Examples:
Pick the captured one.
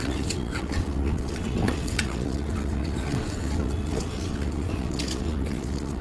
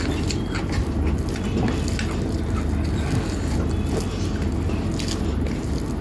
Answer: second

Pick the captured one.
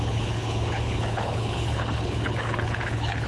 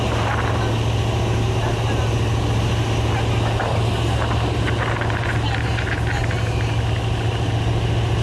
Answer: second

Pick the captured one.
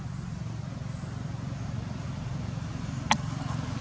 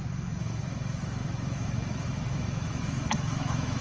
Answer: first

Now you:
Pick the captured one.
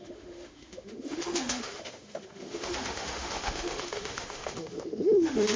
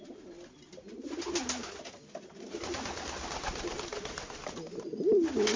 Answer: second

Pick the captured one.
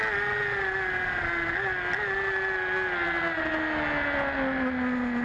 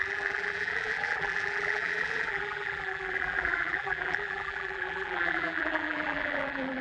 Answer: first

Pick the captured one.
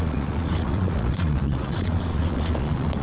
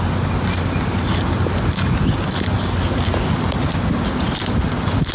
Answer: second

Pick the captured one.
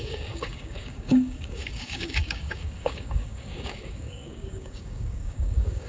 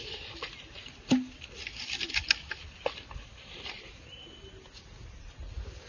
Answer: second